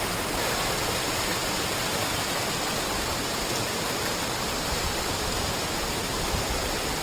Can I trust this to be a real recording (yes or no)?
yes